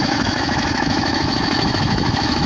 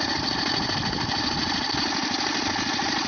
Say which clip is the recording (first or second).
second